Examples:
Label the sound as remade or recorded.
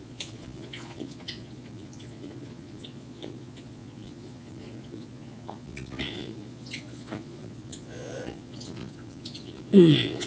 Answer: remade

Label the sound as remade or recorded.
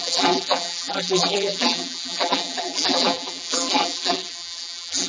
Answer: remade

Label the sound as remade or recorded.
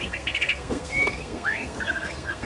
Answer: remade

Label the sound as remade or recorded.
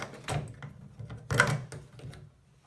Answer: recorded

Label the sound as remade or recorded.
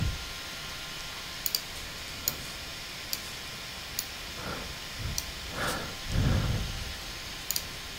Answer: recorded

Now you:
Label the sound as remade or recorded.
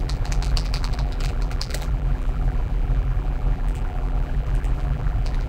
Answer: remade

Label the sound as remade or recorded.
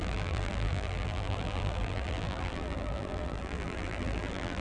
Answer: remade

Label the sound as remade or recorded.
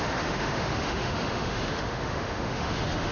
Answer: remade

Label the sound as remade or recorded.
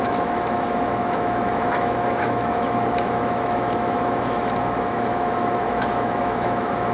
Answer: remade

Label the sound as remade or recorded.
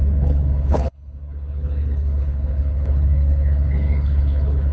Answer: remade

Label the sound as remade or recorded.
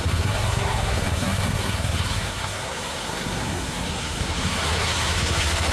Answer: remade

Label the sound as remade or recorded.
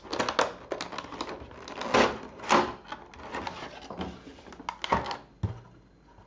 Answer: recorded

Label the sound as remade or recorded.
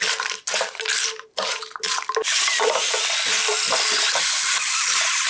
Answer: recorded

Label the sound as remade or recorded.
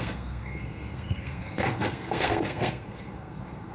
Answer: remade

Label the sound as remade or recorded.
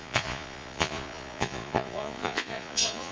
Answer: remade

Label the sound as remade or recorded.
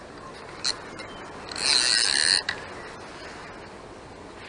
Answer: recorded